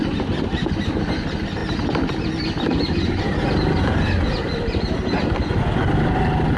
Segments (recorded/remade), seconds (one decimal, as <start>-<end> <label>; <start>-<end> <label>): 0.0-6.6 recorded